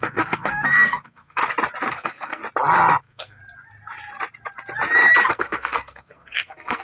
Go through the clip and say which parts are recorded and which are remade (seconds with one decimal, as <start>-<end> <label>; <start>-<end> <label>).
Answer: 0.0-1.4 remade; 1.4-1.9 recorded; 1.9-2.4 remade; 2.4-3.0 recorded; 3.0-3.4 remade; 3.4-5.3 recorded; 5.3-6.8 remade

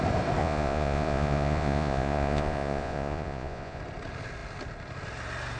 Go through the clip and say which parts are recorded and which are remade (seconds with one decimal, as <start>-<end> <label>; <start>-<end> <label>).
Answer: 0.0-0.4 recorded; 0.4-3.8 remade; 3.8-5.6 recorded

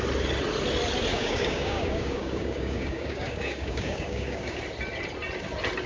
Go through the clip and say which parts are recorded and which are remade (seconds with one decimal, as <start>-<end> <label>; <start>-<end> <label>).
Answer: 0.0-1.1 recorded; 1.1-4.6 remade; 4.6-5.9 recorded

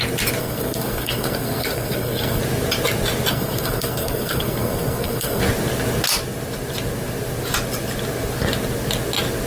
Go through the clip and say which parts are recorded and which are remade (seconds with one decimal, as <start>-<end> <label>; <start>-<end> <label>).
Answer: 0.0-0.4 recorded; 0.4-2.4 remade; 2.4-3.3 recorded; 3.3-5.4 remade; 5.4-9.5 recorded

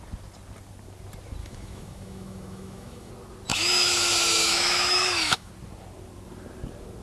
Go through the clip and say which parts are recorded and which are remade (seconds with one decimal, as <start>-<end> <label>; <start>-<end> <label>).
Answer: 0.0-1.4 recorded; 1.4-3.1 remade; 3.1-3.5 recorded; 3.5-5.5 remade; 5.5-7.0 recorded

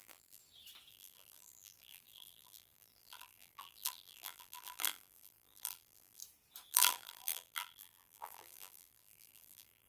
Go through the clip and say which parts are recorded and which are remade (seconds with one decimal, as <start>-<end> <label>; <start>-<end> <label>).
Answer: 0.0-0.4 remade; 0.4-0.9 recorded; 0.9-6.2 remade; 6.2-6.7 recorded; 6.7-9.9 remade